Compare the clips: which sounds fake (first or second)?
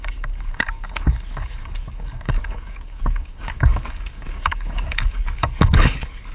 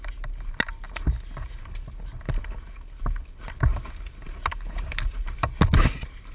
first